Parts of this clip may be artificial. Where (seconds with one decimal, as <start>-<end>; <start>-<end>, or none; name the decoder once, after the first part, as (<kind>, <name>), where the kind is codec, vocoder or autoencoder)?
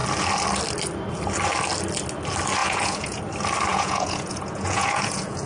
2.6-3.2 (vocoder, Vocos); 3.7-5.5